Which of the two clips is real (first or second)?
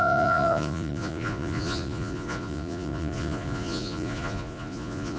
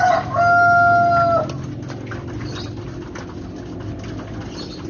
second